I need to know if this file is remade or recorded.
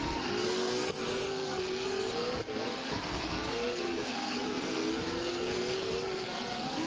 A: remade